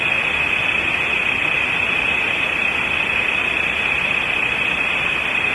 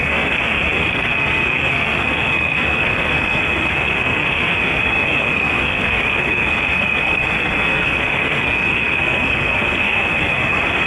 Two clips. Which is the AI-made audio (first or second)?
second